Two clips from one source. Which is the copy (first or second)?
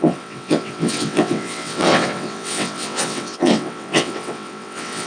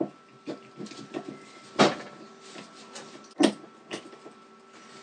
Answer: first